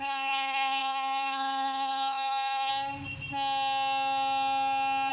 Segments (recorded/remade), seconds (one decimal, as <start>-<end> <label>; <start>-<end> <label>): 0.0-2.7 remade; 2.7-5.1 recorded